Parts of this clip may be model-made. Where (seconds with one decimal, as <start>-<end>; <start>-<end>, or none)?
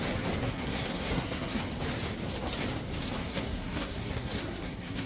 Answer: 0.4-1.6; 3.2-5.1